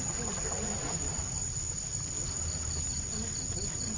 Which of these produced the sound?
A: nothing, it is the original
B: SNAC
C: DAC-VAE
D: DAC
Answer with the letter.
A